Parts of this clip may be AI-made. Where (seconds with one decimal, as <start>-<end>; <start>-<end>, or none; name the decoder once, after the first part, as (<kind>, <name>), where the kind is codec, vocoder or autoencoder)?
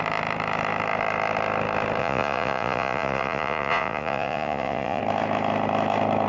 2.0-5.0 (vocoder, Vocos)